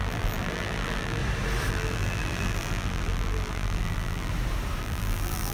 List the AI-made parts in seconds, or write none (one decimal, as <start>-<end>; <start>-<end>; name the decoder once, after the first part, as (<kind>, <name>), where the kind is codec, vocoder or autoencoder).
0.0-1.2 (vocoder, BigVGAN v2); 1.7-4.3; 4.8-5.5